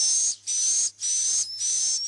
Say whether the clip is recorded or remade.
recorded